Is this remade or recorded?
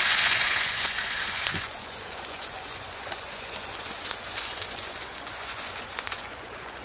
remade